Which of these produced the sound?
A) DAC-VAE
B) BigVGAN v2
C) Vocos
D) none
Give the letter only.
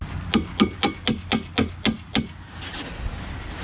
D